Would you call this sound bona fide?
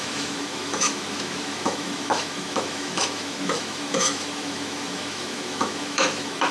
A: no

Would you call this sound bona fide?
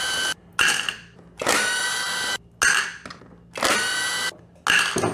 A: yes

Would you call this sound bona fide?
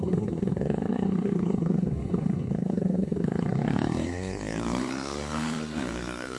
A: no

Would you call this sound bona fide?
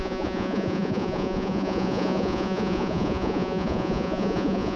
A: no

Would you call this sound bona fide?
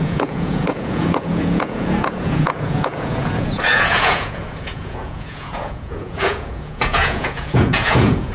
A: no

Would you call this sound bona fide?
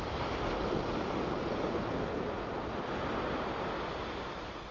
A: yes